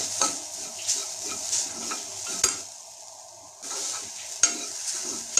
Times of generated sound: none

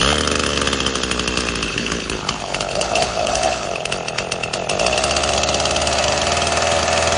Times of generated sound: 1.7-3.9 (codec, HILCodec)

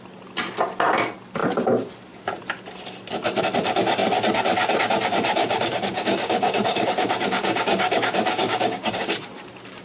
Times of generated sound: 5.4-9.1 (codec, DAC)

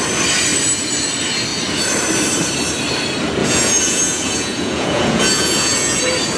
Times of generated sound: 3.4-6.0 (vocoder, Vocos)

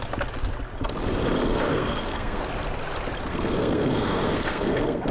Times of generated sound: 1.7-2.4 (codec, SNAC); 3.3-5.1

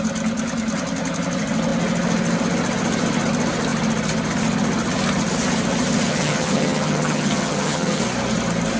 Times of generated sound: 6.1-8.0 (vocoder, HiFi-GAN)